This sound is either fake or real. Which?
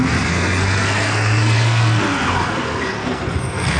fake